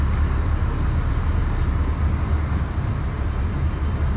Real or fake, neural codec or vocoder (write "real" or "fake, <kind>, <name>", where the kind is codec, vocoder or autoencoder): real